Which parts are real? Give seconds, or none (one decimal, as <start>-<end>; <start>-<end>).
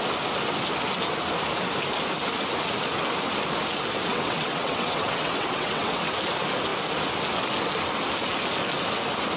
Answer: 0.0-4.1; 6.1-9.4